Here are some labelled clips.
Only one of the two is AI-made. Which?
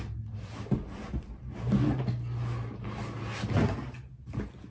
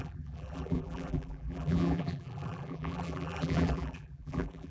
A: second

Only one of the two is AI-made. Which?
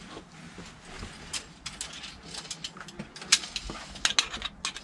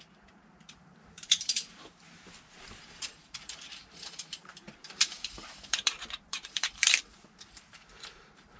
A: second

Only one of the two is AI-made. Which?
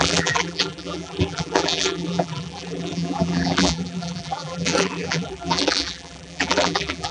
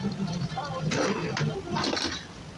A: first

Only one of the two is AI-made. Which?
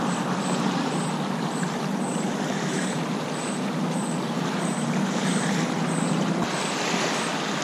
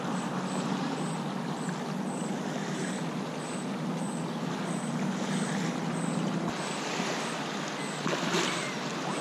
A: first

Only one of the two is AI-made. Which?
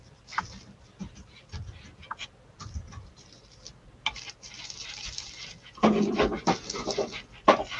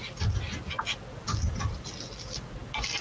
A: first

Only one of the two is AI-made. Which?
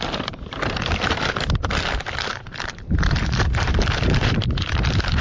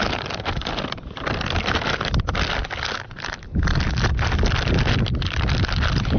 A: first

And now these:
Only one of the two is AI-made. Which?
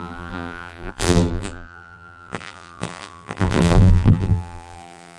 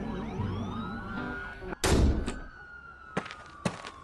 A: first